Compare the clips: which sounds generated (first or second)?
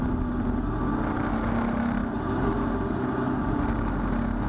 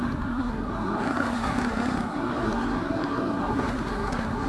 second